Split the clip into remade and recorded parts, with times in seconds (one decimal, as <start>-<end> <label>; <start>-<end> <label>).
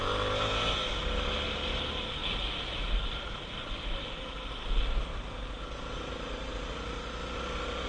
0.0-2.2 recorded; 2.2-4.5 remade; 4.5-5.1 recorded; 5.1-6.1 remade; 6.1-7.9 recorded